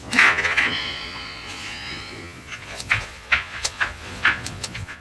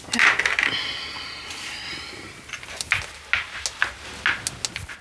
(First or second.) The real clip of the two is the second